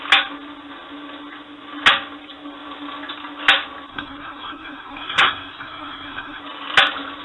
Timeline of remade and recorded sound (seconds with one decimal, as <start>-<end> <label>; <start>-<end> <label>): 0.0-3.9 recorded; 3.9-6.4 remade; 6.4-7.2 recorded